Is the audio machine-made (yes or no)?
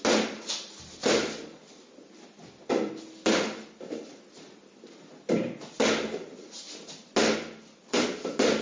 no